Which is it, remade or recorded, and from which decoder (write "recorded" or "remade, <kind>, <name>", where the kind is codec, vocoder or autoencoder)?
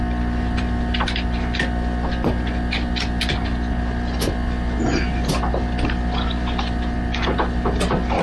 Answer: recorded